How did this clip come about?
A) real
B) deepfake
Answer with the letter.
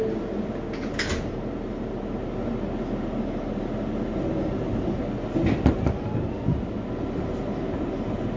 A